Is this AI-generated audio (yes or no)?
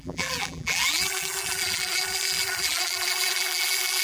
yes